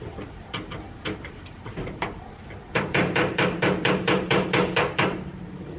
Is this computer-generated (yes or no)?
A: yes